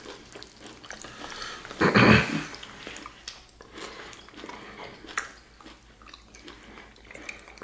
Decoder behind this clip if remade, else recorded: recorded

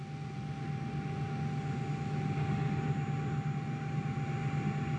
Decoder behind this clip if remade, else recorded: recorded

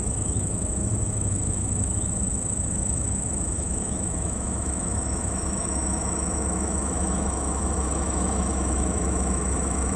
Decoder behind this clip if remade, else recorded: remade, autoencoder, DAC-VAE